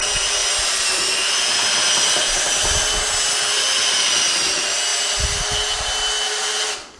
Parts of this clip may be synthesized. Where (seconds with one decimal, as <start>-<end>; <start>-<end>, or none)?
none